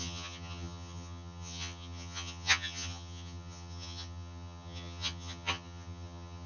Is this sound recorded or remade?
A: remade